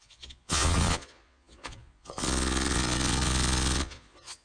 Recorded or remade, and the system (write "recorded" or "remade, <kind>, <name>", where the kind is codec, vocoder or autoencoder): remade, vocoder, Vocos